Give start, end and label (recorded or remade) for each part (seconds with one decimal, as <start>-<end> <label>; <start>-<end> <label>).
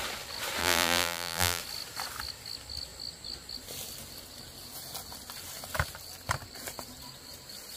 0.0-0.6 recorded; 0.6-1.6 remade; 1.6-7.8 recorded